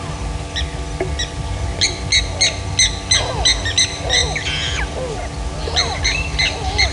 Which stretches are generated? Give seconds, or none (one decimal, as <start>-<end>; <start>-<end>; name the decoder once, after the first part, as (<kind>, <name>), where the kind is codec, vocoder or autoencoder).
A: none